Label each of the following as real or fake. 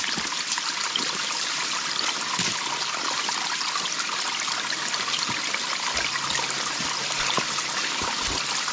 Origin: real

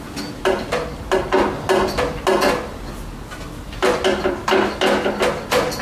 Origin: real